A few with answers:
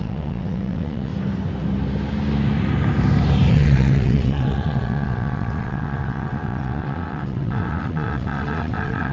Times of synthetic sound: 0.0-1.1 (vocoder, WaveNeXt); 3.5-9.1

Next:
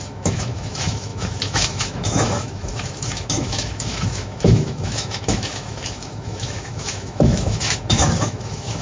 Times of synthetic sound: 0.0-8.8 (autoencoder, DAC-VAE)

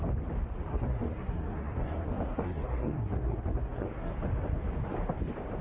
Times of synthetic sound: 0.7-4.1 (codec, SNAC)

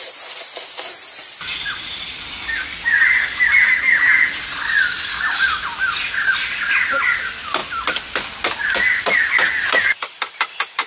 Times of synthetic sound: 5.1-5.6 (codec, DAC)